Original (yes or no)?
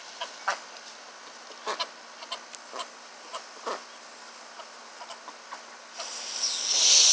yes